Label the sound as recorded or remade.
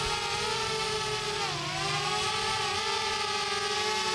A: recorded